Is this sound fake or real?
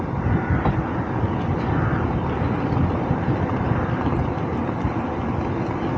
real